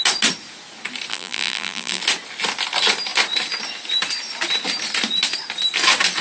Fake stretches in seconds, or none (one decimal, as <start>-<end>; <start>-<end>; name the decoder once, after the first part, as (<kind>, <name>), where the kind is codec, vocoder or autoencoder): 1.1-2.0 (vocoder, BigVGAN v2)

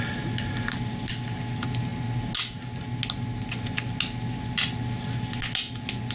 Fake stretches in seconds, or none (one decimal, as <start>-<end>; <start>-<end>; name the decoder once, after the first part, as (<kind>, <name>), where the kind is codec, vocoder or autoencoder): none

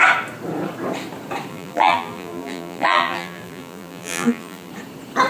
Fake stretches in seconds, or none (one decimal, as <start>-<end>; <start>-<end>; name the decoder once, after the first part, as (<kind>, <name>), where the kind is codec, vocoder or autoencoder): 1.5-4.7 (vocoder, BigVGAN v2)

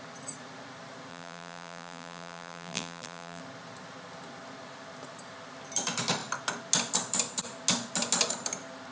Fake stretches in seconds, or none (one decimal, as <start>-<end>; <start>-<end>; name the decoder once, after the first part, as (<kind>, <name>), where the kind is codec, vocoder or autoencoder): 1.1-3.4 (vocoder, BigVGAN v2)

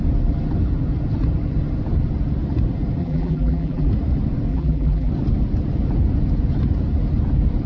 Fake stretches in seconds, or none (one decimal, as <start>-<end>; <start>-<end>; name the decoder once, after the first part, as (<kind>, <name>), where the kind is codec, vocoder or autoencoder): 3.0-3.9 (vocoder, BigVGAN v2); 4.5-5.1

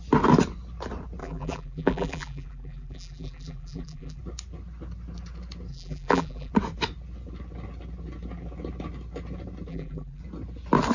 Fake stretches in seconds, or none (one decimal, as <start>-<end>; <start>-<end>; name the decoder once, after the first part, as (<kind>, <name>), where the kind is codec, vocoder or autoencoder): 1.2-4.2 (vocoder, BigVGAN v2); 5.7-6.5; 9.7-10.2

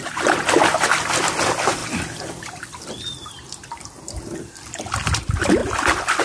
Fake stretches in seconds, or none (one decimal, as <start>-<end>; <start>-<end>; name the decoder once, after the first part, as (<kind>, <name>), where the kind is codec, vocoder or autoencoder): 0.0-5.6 (vocoder, BigVGAN v2)

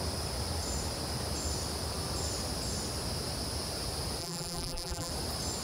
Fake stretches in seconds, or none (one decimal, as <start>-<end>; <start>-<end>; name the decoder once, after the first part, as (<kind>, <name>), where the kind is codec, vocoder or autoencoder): 4.2-5.1 (vocoder, BigVGAN v2)